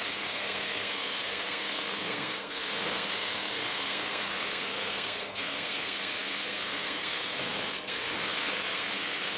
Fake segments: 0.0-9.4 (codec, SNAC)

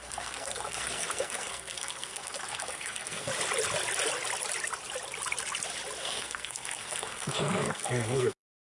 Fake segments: 0.0-3.3 (codec, SNAC); 6.0-8.7

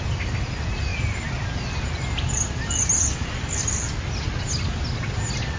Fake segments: none

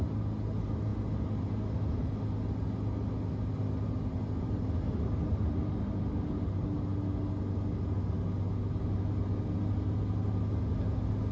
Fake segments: none

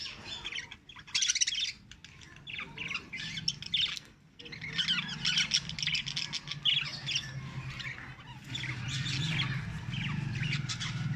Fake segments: 3.9-4.4 (codec, SNAC)